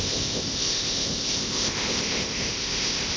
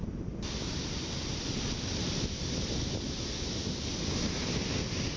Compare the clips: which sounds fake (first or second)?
first